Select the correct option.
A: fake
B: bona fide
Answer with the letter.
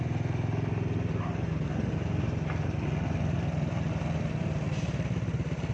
B